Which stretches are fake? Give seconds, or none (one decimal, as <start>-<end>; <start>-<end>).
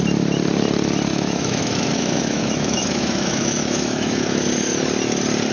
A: 1.1-4.4